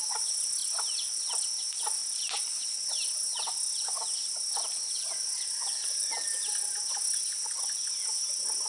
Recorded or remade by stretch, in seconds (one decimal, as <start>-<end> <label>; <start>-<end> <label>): 0.0-8.7 recorded